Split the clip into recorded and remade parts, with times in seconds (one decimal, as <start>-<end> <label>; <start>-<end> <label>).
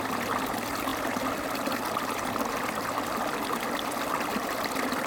0.0-5.1 recorded